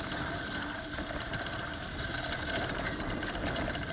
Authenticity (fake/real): real